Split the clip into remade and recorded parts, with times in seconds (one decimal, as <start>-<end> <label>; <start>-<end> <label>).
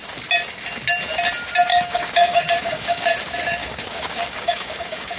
0.0-1.7 recorded; 1.7-3.1 remade; 3.1-3.6 recorded; 3.6-5.2 remade